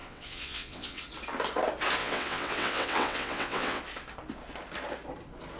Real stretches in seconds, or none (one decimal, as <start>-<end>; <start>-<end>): 1.0-2.0; 3.8-5.6